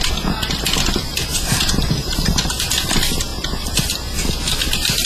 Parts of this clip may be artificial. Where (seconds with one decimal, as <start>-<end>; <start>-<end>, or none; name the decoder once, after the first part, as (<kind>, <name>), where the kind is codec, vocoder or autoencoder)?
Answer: 1.3-2.3 (vocoder, BigVGAN v2)